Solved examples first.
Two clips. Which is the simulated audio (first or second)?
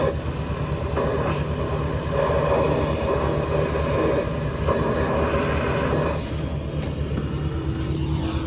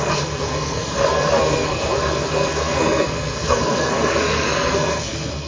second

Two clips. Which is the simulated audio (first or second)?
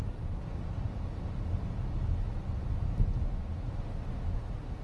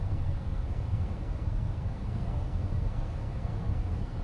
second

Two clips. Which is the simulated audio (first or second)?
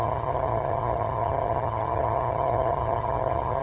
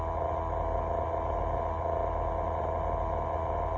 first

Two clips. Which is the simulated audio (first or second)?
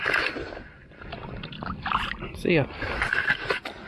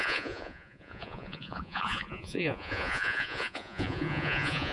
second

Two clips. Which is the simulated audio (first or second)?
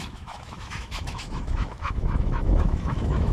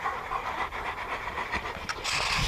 first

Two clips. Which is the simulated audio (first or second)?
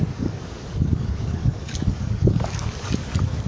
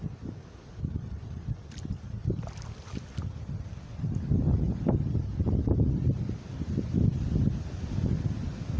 first